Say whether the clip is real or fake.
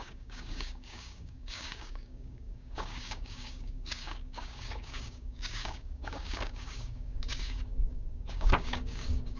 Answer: fake